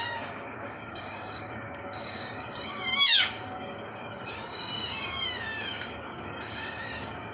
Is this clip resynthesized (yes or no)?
yes